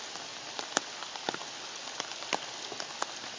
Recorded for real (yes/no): yes